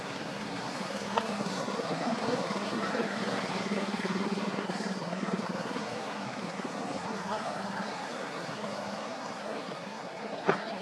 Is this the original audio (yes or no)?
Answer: no